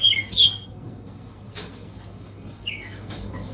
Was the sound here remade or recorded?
remade